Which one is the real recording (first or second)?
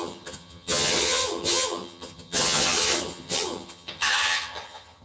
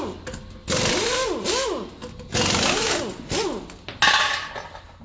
second